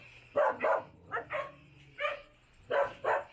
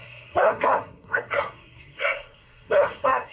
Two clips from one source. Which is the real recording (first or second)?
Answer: first